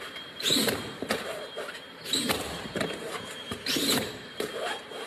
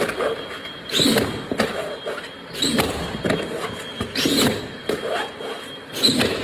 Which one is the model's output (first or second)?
first